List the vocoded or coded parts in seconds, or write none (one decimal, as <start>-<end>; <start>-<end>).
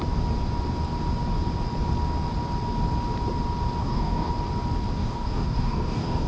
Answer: 3.8-4.3; 5.0-6.3